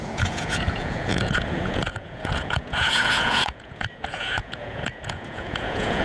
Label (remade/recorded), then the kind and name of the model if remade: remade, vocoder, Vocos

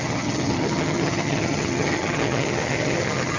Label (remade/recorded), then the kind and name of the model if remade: remade, vocoder, HiFi-GAN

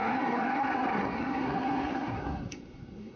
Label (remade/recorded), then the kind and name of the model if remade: remade, codec, SNAC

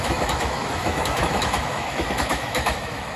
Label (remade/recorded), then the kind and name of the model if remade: remade, autoencoder, DAC-VAE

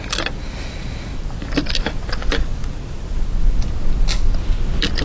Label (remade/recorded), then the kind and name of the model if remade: recorded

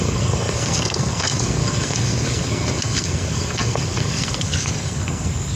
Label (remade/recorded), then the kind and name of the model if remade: remade, codec, SNAC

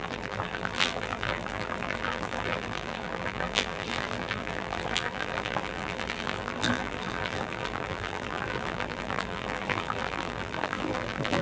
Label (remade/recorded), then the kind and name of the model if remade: remade, vocoder, BigVGAN v2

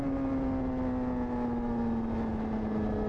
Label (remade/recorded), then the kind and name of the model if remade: recorded